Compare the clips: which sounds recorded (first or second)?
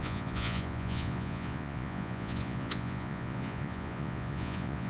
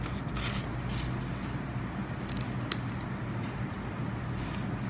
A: second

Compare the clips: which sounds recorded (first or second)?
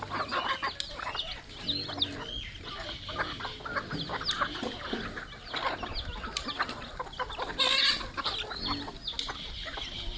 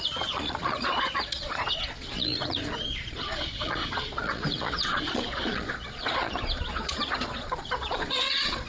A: first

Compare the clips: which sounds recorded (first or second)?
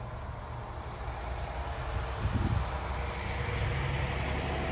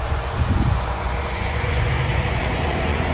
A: first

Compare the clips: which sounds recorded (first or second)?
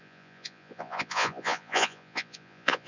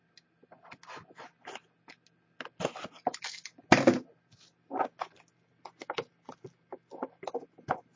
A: second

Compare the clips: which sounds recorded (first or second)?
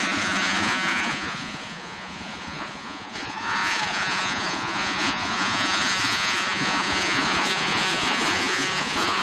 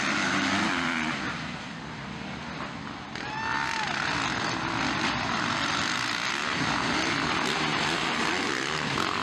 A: second